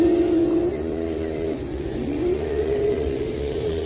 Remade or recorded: remade